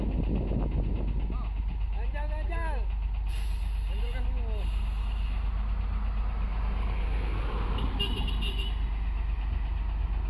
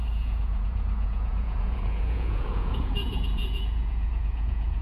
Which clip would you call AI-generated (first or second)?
second